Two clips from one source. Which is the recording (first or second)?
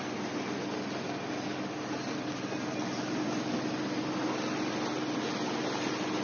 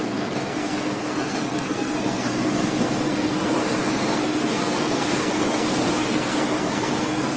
first